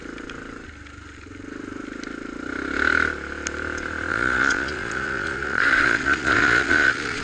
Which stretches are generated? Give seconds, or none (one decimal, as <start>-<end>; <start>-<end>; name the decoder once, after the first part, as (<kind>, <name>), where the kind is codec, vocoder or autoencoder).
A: 4.1-7.2 (vocoder, Vocos)